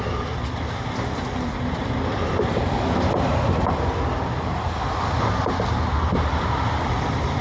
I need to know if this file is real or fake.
real